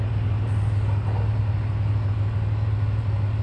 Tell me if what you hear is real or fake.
real